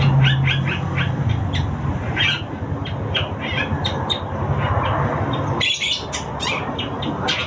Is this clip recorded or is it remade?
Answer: recorded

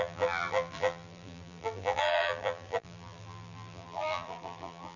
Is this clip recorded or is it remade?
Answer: remade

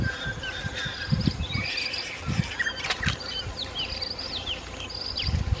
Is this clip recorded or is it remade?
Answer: recorded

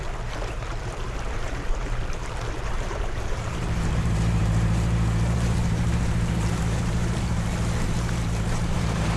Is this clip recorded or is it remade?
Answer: remade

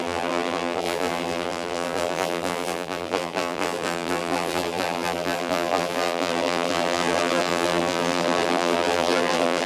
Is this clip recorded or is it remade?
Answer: remade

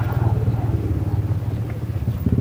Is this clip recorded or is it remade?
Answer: recorded